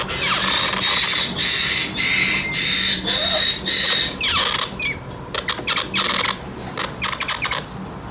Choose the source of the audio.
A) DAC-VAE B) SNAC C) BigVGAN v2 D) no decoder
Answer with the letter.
D